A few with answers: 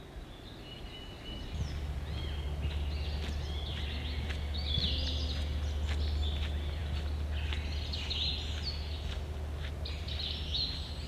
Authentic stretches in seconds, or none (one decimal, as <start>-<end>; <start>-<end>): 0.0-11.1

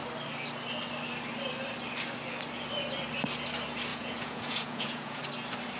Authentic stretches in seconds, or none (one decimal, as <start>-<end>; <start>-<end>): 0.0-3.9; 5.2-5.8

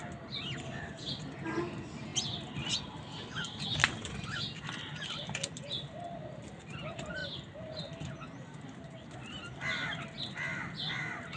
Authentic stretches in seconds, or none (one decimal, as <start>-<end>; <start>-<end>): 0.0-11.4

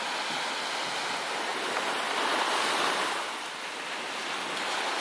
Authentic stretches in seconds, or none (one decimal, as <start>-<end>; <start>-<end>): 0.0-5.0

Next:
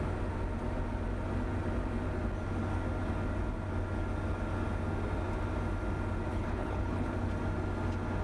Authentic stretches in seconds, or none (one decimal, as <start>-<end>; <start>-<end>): 0.0-6.3; 7.3-8.2